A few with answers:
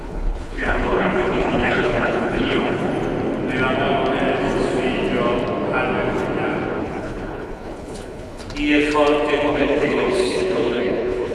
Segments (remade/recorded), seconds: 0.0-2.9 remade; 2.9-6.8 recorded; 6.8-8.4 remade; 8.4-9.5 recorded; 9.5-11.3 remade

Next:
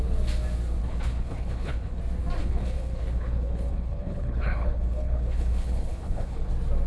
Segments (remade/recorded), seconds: 0.0-0.8 recorded; 0.8-2.0 remade; 2.0-2.4 recorded; 2.4-6.5 remade; 6.5-6.9 recorded